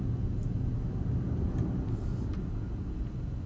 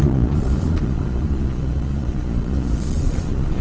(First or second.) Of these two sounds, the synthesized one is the second